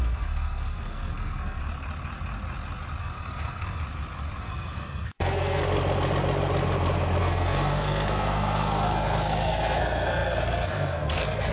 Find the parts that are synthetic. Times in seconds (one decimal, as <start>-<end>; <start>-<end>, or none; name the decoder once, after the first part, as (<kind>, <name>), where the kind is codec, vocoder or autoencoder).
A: 0.0-1.6 (codec, SNAC); 3.0-3.8; 4.4-5.6; 7.2-11.5

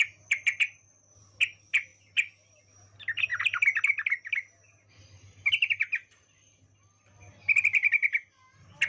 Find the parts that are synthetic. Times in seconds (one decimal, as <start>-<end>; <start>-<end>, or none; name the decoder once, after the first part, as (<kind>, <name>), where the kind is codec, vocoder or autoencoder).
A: none